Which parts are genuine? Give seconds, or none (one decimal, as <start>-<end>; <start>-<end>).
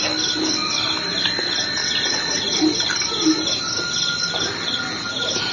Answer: 0.0-1.8; 2.6-5.5